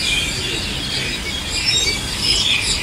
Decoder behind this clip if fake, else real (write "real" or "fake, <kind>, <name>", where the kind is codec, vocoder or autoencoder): real